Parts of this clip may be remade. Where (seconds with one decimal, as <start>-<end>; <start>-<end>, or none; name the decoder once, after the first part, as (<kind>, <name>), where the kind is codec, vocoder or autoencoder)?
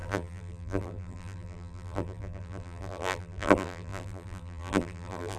0.0-5.4 (vocoder, BigVGAN v2)